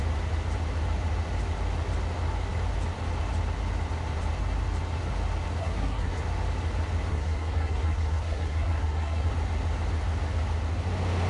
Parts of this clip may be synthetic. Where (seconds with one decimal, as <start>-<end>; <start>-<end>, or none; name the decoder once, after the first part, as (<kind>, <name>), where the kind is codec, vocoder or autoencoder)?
5.6-6.2 (codec, SNAC); 7.1-9.3